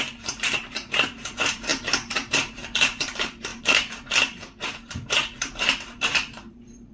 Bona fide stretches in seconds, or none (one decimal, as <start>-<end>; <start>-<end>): none